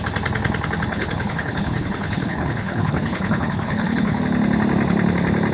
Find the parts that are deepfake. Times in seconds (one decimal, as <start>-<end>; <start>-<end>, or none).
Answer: 0.9-4.2